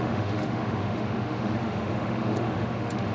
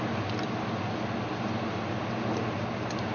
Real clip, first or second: second